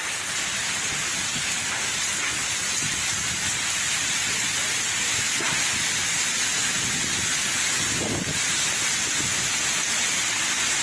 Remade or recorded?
recorded